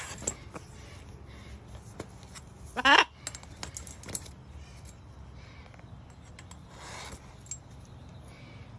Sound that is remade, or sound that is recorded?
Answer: recorded